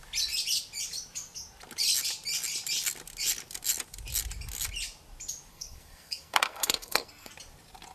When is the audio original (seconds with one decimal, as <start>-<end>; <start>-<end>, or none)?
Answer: 0.0-5.5; 7.3-7.9